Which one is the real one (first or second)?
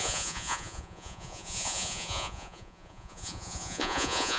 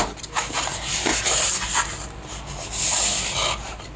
second